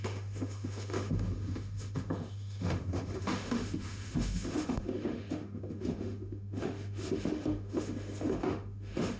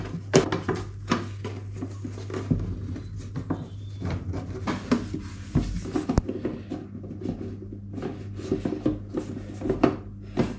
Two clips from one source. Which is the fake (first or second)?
first